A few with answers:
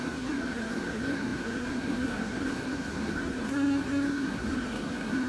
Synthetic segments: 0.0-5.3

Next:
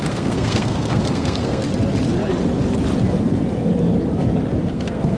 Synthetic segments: 0.0-1.6; 4.7-5.2

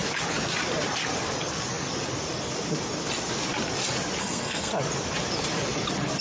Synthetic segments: 4.2-4.7

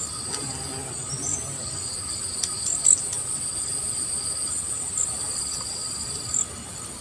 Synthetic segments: none

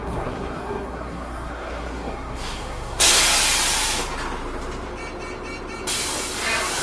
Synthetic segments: 0.0-3.2

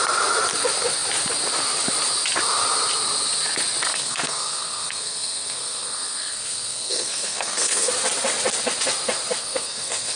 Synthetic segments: 3.9-7.9; 9.4-10.2

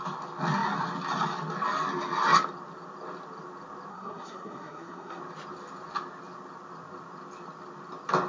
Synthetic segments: 3.9-5.2

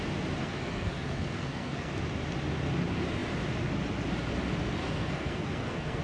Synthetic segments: 0.4-1.9; 4.8-6.0